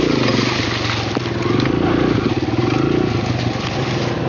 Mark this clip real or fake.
real